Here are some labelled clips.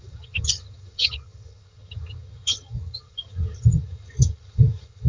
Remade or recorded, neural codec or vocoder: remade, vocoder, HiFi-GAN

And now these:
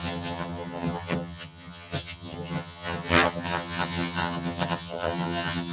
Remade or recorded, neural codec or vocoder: remade, vocoder, HiFi-GAN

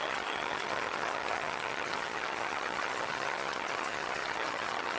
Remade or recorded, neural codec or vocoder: remade, vocoder, HiFi-GAN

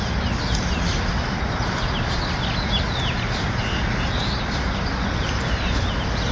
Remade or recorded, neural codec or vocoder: recorded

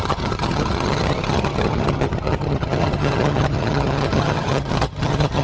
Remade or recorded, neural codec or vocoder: remade, vocoder, HiFi-GAN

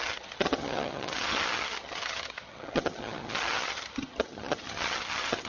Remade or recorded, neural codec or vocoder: remade, vocoder, HiFi-GAN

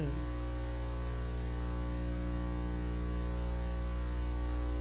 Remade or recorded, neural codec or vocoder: recorded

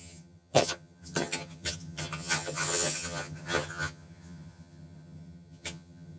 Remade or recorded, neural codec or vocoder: remade, vocoder, HiFi-GAN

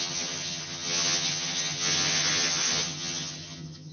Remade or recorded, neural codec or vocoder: remade, vocoder, HiFi-GAN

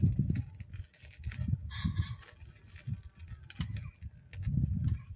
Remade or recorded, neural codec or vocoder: recorded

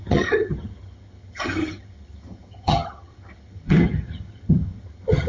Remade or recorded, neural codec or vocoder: remade, vocoder, HiFi-GAN